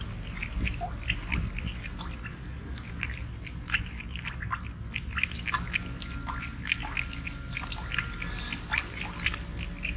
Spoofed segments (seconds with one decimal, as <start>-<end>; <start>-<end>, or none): 2.3-3.0